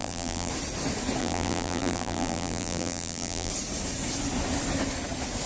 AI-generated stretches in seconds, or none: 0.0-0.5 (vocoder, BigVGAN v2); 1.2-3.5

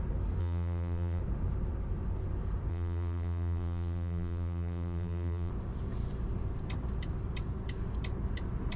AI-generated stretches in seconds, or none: 0.4-1.2 (vocoder, BigVGAN v2); 2.7-5.5